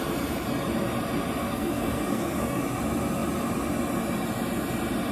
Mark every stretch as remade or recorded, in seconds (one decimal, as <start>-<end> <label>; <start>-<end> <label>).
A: 0.0-1.4 recorded; 1.4-2.6 remade; 2.6-5.1 recorded